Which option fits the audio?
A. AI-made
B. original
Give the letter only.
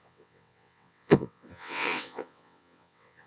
A